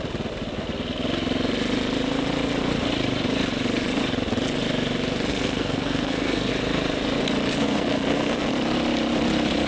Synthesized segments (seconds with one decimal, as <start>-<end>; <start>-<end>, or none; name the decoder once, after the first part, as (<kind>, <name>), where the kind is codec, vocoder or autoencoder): 5.3-6.5 (codec, SNAC); 7.6-8.5